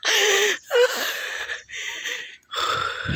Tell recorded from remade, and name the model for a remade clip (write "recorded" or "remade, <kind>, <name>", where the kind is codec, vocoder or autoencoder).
remade, vocoder, BigVGAN v2